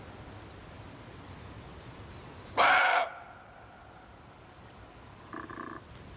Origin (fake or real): real